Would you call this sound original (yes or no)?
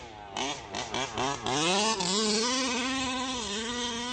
yes